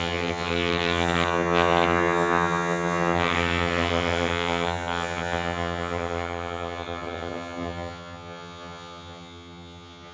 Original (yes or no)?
no